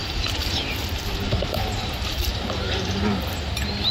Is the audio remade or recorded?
remade